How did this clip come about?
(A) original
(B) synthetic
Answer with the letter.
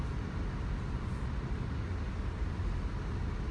A